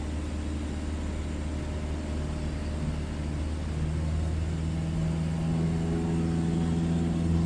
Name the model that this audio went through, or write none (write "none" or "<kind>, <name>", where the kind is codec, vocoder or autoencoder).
none